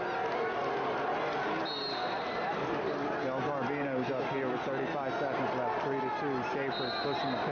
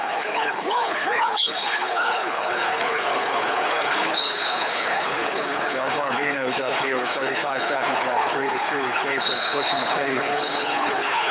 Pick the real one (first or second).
first